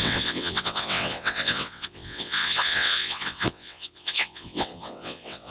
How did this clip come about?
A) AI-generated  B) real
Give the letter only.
A